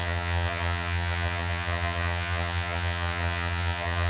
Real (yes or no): no